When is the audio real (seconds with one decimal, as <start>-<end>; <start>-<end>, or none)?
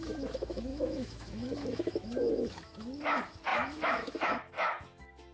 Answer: none